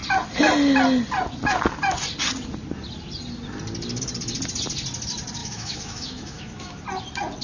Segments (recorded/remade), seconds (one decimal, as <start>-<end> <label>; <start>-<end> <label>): 0.0-5.4 recorded; 5.4-6.8 remade; 6.8-7.4 recorded